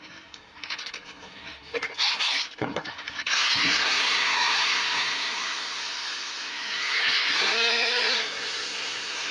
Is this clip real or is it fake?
fake